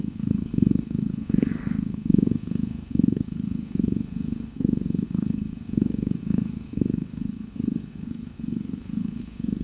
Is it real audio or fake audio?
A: fake